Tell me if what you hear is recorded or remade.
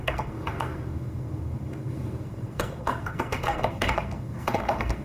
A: remade